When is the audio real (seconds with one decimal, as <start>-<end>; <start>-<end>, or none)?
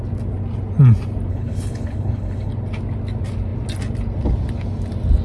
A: 0.0-1.3; 2.5-5.2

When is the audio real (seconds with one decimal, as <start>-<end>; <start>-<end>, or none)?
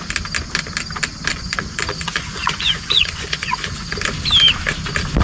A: 0.0-1.3; 3.9-5.2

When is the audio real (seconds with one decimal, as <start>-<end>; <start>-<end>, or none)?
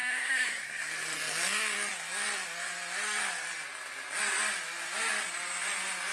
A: 0.9-6.1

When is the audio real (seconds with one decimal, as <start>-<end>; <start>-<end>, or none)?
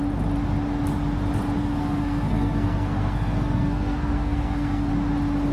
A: 0.0-1.6; 4.9-5.5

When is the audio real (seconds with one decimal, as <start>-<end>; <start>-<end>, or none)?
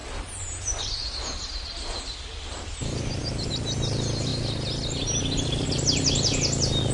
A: 3.5-6.9